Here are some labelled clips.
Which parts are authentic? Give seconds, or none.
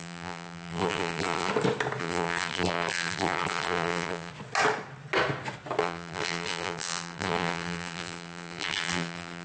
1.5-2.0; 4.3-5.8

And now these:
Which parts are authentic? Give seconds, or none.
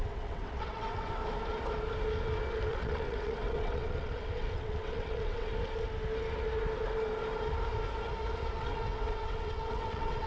1.2-2.7; 5.5-8.6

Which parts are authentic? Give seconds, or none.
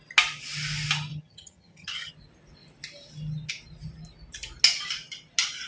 0.0-1.1; 2.1-5.7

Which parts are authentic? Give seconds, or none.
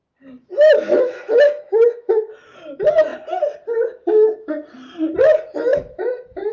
0.0-0.7; 3.1-5.2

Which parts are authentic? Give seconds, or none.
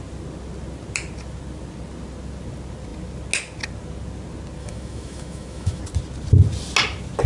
0.0-4.6; 5.8-7.3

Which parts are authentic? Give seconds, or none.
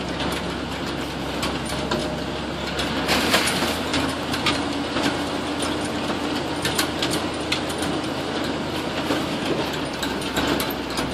0.0-11.1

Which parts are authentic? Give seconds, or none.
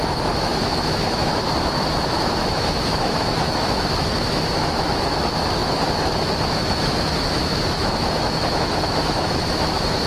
none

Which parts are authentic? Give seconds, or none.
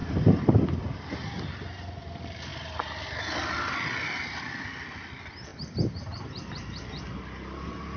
0.0-8.0